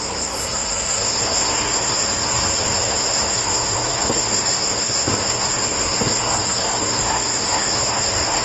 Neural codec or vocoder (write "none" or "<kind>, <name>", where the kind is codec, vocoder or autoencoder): codec, SNAC